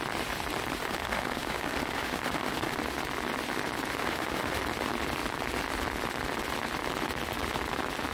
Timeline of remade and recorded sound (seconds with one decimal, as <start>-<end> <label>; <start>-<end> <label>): 0.0-0.8 recorded; 0.8-2.8 remade; 2.8-4.0 recorded; 4.0-4.6 remade; 4.6-8.1 recorded